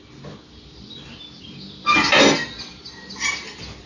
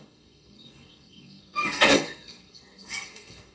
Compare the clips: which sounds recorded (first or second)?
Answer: first